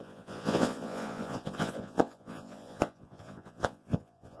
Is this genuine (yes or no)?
no